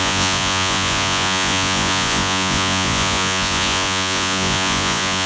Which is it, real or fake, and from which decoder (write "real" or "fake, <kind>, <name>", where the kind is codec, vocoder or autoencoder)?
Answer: fake, vocoder, Vocos